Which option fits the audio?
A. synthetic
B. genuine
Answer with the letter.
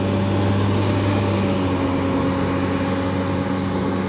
B